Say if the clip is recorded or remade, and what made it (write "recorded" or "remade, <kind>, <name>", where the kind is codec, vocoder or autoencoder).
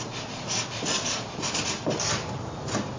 recorded